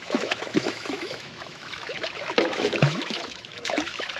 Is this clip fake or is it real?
fake